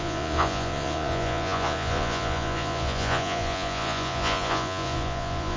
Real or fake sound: fake